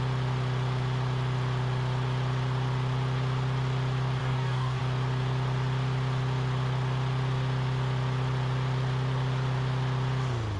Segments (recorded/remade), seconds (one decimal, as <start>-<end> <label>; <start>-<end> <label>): 0.0-4.2 recorded; 4.2-4.8 remade; 4.8-10.6 recorded

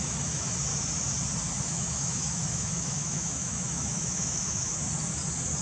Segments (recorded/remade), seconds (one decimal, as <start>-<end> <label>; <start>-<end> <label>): 0.0-0.7 remade; 0.7-1.6 recorded; 1.6-4.7 remade; 4.7-5.6 recorded

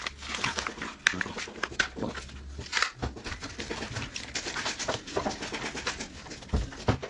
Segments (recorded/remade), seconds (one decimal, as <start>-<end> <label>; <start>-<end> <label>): 0.0-7.1 recorded

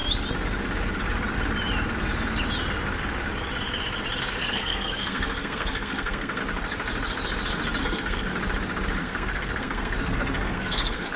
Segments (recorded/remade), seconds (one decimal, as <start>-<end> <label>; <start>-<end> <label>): 0.0-4.2 recorded; 4.2-6.4 remade; 6.4-7.8 recorded; 7.8-8.3 remade; 8.3-9.0 recorded; 9.0-11.2 remade

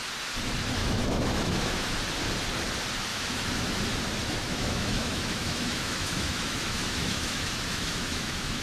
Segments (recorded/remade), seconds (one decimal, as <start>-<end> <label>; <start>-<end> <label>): 0.0-0.8 recorded; 0.8-1.9 remade; 1.9-3.1 recorded; 3.1-3.8 remade; 3.8-4.2 recorded; 4.2-8.6 remade